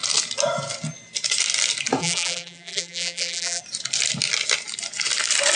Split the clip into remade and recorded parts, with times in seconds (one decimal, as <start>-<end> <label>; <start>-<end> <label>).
0.0-2.0 recorded; 2.0-3.6 remade; 3.6-5.6 recorded